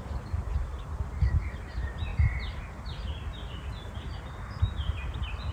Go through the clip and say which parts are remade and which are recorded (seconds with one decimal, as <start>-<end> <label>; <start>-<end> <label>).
0.0-5.5 recorded